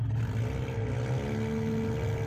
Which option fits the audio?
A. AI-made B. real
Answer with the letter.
B